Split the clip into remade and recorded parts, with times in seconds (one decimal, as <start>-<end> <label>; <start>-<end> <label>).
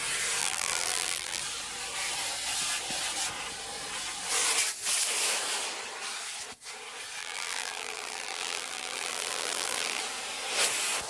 0.0-0.4 recorded; 0.4-1.4 remade; 1.4-7.2 recorded; 7.2-10.0 remade; 10.0-11.1 recorded